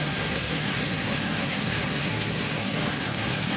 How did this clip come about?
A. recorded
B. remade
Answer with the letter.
B